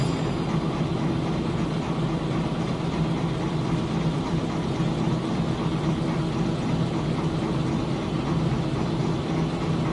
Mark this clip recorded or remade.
recorded